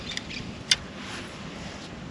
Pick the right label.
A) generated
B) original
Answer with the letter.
B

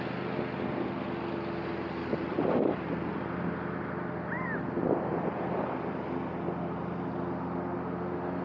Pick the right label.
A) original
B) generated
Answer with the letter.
A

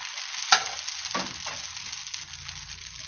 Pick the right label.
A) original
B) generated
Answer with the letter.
A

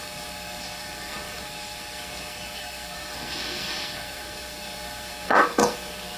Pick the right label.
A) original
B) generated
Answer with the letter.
B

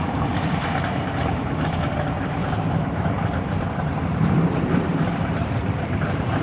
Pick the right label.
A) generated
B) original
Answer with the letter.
A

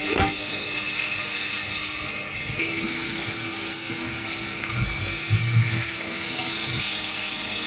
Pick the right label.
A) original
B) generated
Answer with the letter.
B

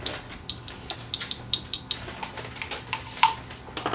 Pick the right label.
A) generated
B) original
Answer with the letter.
B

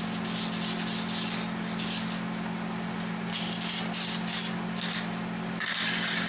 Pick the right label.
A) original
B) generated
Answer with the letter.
A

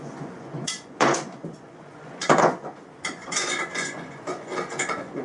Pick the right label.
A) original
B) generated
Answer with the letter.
B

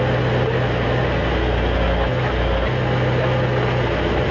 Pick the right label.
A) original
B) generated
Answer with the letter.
A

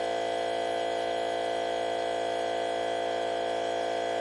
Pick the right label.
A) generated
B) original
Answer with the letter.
B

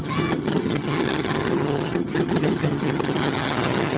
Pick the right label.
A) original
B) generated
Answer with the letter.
B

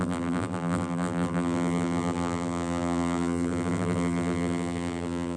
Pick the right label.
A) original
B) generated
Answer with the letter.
B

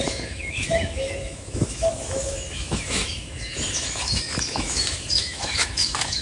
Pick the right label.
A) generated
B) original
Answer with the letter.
A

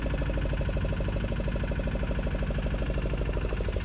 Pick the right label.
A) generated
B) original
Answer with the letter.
B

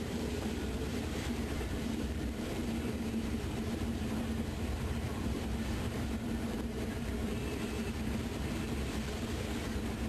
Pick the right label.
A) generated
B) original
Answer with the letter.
A